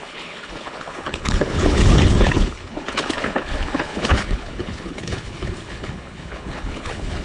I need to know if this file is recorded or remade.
remade